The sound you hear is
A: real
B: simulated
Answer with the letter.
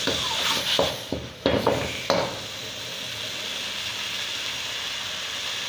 A